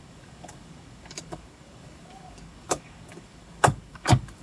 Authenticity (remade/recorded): remade